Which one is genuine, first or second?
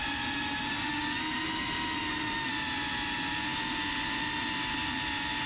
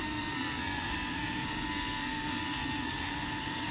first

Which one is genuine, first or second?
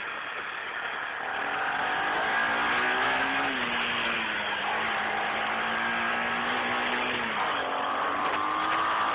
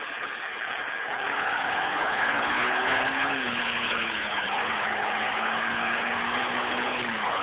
first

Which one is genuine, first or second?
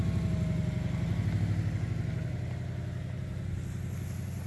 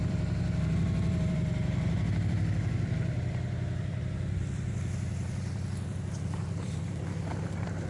first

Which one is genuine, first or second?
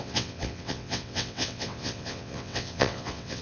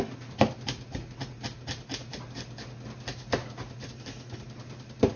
second